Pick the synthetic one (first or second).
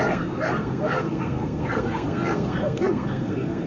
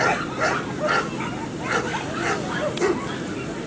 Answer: first